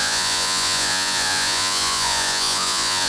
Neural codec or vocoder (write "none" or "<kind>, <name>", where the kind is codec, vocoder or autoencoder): vocoder, Vocos